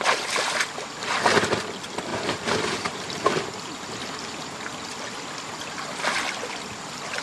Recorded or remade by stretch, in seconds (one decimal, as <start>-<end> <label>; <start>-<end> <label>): 0.0-2.1 recorded; 2.1-3.3 remade; 3.3-7.2 recorded